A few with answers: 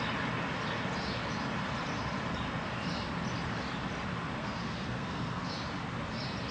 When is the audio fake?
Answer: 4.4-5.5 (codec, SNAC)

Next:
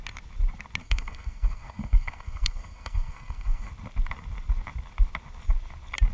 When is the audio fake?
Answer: 0.8-3.7 (codec, SNAC)